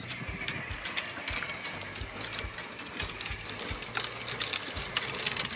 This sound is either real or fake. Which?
real